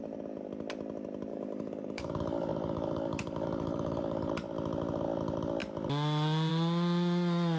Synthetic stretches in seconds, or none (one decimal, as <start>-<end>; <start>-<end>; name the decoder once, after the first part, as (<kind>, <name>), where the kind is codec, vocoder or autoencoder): 1.3-4.3 (codec, DAC)